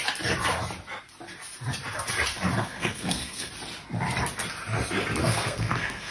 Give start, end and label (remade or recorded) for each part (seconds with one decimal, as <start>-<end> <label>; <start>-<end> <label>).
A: 0.0-2.6 recorded; 2.6-3.5 remade; 3.5-5.2 recorded; 5.2-6.1 remade